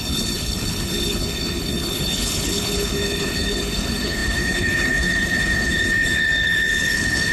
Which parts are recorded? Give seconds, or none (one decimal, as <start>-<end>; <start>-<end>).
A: none

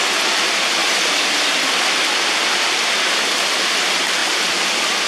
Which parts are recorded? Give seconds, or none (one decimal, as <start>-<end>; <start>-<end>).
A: 0.0-5.1